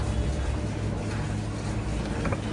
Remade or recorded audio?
recorded